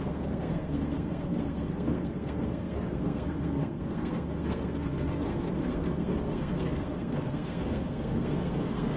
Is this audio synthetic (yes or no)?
yes